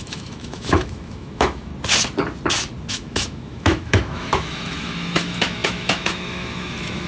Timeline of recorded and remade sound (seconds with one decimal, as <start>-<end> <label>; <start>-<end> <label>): 0.0-1.7 remade; 1.7-2.9 recorded; 2.9-7.1 remade